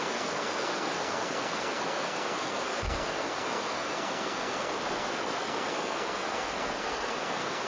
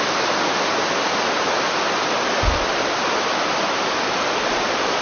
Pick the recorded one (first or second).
second